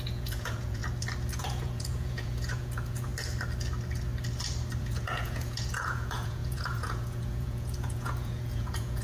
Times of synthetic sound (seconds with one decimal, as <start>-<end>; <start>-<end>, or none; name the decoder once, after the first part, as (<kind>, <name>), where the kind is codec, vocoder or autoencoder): 0.0-0.8 (vocoder, Vocos); 1.4-3.1; 4.8-9.0